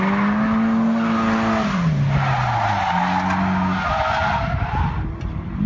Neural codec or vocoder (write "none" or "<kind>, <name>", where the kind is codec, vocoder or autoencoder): none